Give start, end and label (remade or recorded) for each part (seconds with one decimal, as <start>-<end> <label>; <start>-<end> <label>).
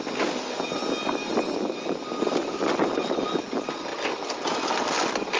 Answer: 0.0-5.4 recorded